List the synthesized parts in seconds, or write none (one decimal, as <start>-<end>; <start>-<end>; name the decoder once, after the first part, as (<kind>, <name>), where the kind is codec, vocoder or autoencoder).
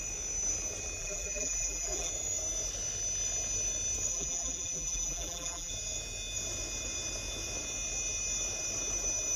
1.0-2.1 (vocoder, BigVGAN v2); 4.1-5.7